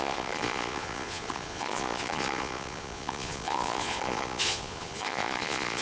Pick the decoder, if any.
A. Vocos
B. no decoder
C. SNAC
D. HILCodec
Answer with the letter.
A